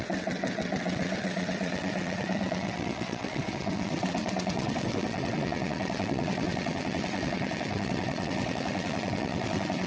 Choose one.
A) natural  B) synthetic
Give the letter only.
B